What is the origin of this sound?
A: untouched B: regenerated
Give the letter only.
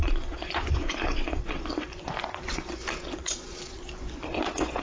B